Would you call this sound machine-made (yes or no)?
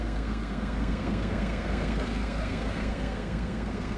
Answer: yes